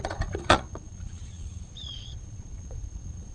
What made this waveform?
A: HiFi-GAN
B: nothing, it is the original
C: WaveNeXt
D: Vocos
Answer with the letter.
D